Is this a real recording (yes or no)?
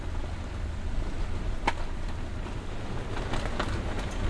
yes